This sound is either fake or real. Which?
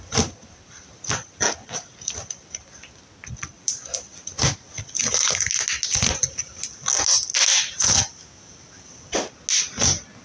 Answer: real